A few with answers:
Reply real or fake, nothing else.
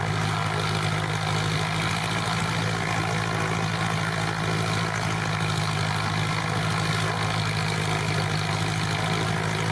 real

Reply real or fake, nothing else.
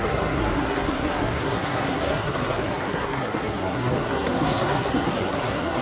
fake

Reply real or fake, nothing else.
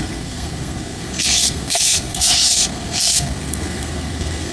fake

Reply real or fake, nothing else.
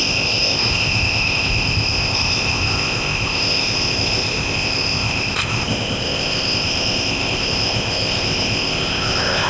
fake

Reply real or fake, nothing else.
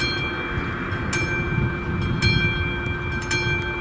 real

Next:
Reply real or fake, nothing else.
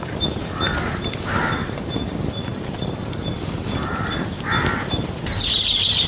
real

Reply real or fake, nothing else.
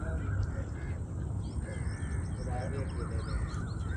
real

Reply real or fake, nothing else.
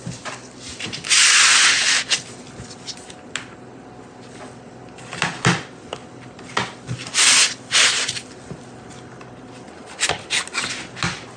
real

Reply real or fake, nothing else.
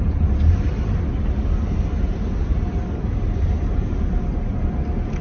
real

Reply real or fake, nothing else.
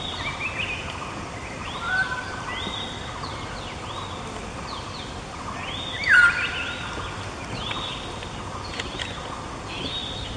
real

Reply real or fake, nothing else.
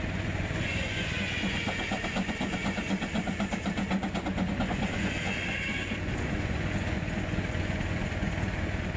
fake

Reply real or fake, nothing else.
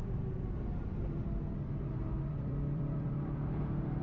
fake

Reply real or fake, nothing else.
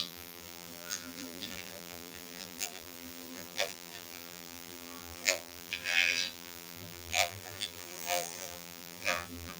fake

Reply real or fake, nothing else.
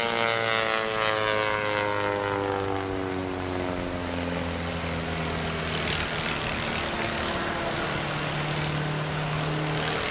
real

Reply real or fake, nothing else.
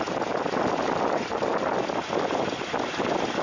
real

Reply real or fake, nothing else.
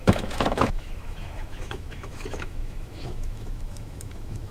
fake